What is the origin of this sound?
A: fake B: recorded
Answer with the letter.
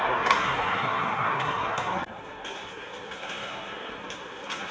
A